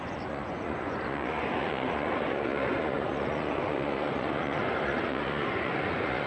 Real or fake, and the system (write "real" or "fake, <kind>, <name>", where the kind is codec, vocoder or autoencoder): fake, vocoder, Vocos